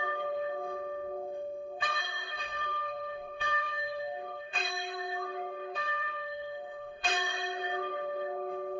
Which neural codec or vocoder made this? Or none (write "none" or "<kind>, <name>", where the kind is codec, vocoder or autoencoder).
autoencoder, DAC-VAE